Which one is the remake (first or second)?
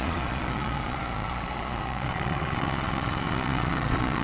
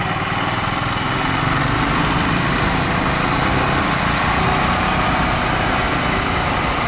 first